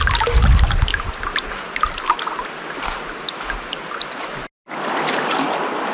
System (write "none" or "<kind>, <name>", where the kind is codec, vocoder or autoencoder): none